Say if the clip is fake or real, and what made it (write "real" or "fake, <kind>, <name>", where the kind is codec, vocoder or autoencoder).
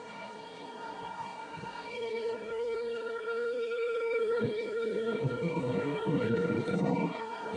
fake, codec, SNAC